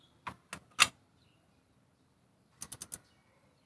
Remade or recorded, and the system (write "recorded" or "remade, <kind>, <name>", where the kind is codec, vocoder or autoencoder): recorded